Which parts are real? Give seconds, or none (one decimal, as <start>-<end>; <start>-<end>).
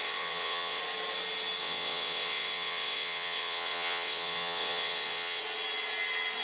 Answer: 0.8-1.6; 5.4-6.4